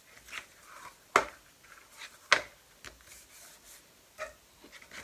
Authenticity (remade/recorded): recorded